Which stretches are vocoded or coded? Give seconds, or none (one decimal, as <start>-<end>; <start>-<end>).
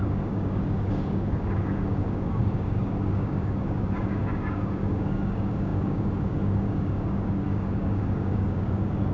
0.0-9.1